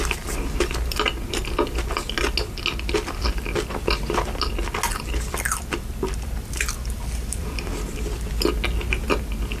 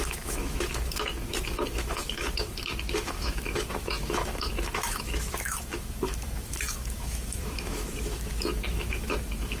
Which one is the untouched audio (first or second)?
first